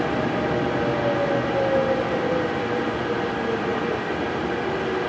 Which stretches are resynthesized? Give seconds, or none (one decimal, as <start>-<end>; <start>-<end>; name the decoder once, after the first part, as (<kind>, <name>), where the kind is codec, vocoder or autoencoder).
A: none